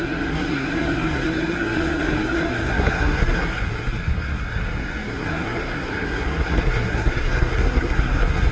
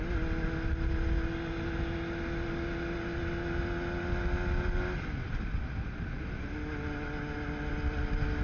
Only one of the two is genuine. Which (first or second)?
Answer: second